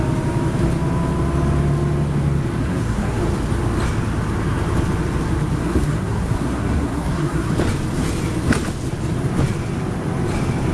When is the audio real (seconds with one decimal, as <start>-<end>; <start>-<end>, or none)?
0.0-2.6; 3.2-5.6; 7.5-10.7